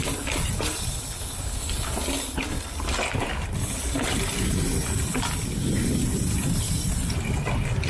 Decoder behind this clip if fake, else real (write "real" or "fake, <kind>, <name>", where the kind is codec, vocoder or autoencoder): real